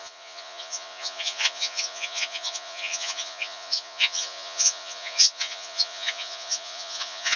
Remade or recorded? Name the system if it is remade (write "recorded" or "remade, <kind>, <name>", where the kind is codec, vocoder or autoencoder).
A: remade, vocoder, Vocos